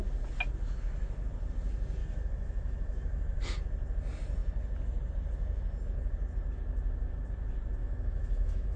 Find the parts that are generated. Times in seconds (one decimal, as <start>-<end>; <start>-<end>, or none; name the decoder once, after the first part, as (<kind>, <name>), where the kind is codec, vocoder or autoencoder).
2.0-3.4 (autoencoder, DAC-VAE); 7.8-8.8